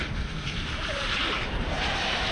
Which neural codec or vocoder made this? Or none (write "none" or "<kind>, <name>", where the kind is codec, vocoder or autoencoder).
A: vocoder, BigVGAN v2